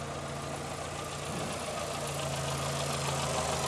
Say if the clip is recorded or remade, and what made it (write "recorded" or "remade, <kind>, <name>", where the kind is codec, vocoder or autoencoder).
recorded